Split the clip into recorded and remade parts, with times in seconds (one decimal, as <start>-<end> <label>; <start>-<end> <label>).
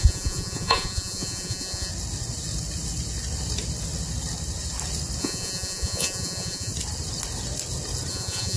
0.0-1.9 remade; 1.9-5.2 recorded; 5.2-6.7 remade; 6.7-8.1 recorded; 8.1-8.6 remade